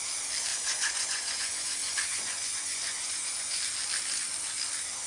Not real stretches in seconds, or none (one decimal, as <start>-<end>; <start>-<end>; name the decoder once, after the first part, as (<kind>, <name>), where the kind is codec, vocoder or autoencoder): 0.5-3.6 (vocoder, Vocos)